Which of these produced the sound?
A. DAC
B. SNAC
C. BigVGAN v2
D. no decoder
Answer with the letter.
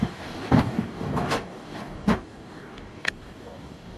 A